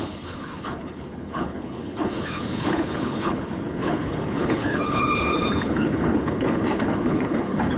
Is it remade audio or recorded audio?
remade